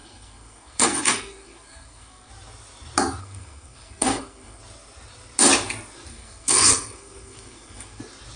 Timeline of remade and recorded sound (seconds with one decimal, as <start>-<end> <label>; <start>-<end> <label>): 0.0-2.3 remade; 2.3-3.2 recorded; 3.2-4.6 remade; 4.6-6.1 recorded; 6.1-8.0 remade; 8.0-8.4 recorded